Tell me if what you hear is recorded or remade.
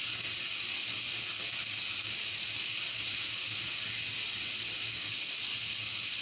recorded